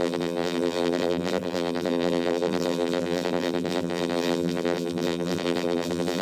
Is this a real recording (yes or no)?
no